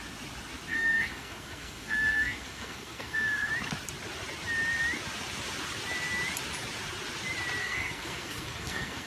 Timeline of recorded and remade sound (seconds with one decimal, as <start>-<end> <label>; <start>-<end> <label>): 0.0-0.7 recorded; 0.7-3.5 remade; 3.5-7.6 recorded; 7.6-9.1 remade